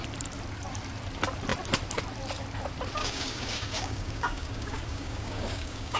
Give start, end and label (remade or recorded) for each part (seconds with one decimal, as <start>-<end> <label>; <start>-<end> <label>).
0.0-3.0 recorded; 3.0-6.0 remade